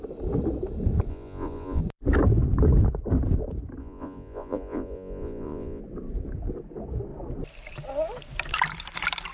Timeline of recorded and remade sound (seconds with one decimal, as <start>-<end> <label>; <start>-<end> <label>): 0.0-1.1 recorded; 1.1-1.8 remade; 1.8-3.8 recorded; 3.8-5.8 remade; 5.8-9.3 recorded